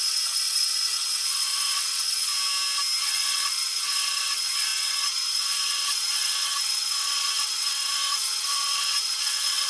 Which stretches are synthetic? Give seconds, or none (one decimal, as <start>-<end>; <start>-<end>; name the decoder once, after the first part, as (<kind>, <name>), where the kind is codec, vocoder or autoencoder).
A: 0.0-2.3 (vocoder, WaveNeXt); 3.0-9.7